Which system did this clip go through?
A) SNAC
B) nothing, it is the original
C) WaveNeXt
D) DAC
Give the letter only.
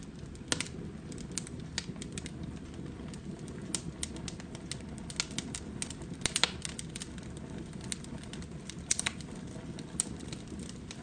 B